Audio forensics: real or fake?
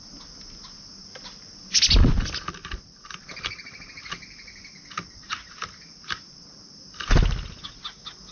real